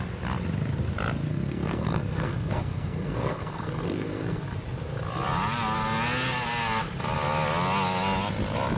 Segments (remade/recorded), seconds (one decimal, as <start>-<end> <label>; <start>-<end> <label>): 0.0-1.3 recorded; 1.3-4.4 remade; 4.4-8.8 recorded